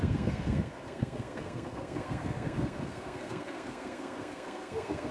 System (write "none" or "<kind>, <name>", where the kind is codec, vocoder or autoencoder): codec, SNAC